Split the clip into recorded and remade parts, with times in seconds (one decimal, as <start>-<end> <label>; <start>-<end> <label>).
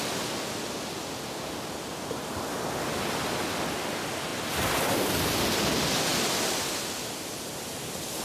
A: 0.0-8.2 recorded